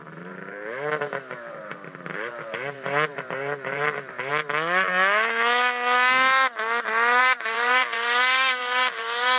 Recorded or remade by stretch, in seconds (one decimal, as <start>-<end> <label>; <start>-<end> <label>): 0.0-4.3 remade; 4.3-7.2 recorded; 7.2-9.4 remade